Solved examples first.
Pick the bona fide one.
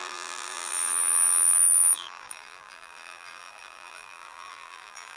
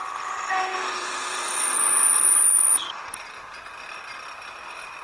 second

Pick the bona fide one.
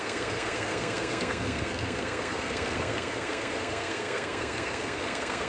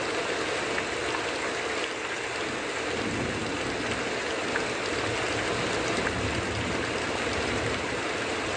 second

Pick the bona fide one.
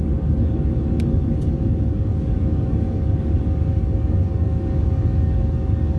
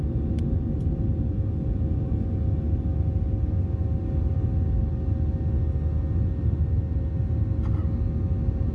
second